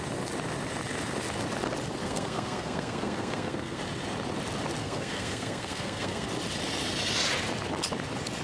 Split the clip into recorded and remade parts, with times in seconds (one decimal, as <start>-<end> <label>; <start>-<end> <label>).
0.0-2.0 recorded; 2.0-3.8 remade; 3.8-4.8 recorded; 4.8-6.3 remade; 6.3-8.4 recorded